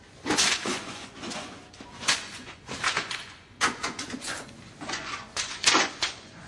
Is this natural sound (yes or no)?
no